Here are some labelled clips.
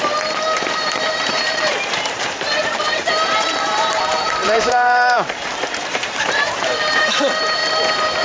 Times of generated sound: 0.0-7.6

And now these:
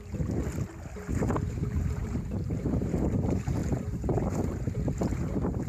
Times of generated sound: 0.0-0.4; 1.1-5.7

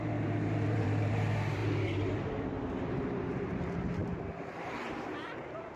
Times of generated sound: 0.0-1.6; 2.9-4.0; 4.9-5.8